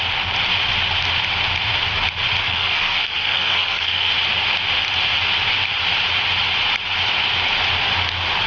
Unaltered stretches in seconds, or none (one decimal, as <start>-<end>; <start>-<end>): 0.0-2.4; 4.1-8.5